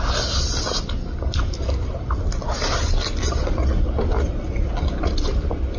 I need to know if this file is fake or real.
real